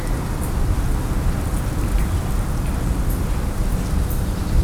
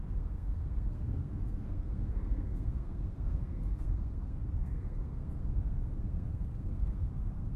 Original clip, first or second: first